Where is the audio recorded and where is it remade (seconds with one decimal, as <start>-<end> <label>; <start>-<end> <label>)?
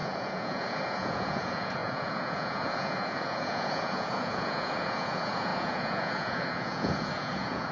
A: 0.0-7.7 remade